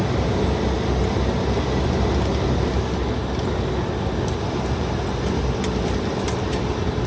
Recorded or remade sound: recorded